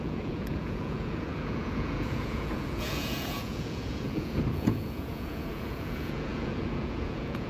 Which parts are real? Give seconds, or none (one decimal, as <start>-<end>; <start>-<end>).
none